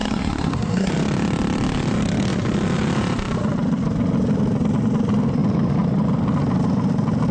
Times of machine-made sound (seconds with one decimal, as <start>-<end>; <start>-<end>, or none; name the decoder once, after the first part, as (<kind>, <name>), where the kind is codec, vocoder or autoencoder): 0.0-0.9 (codec, SNAC)

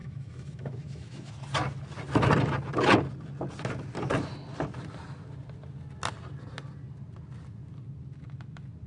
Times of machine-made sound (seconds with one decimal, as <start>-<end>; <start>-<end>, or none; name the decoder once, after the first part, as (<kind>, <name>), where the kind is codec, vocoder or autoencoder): 0.0-1.3 (autoencoder, DAC-VAE)

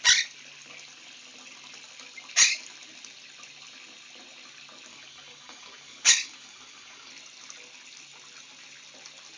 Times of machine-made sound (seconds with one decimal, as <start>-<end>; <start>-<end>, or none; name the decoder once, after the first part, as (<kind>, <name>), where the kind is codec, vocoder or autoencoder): 4.9-7.1 (codec, DAC)

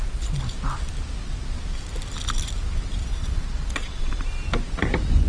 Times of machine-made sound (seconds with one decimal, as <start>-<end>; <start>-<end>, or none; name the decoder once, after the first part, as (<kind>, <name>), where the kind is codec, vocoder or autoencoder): 3.0-4.0 (vocoder, Vocos)

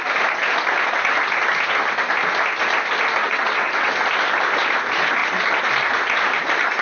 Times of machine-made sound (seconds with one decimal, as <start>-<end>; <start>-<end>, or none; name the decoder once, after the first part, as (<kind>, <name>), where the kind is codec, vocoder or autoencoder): 3.2-3.9 (vocoder, WaveNeXt)

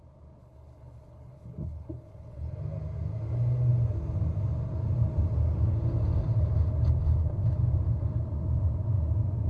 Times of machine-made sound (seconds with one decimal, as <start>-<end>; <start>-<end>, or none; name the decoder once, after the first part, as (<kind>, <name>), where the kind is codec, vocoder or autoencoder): 0.4-2.5 (codec, HILCodec)